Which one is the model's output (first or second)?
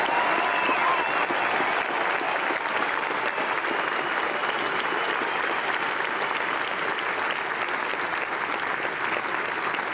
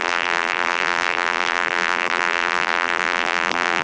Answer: second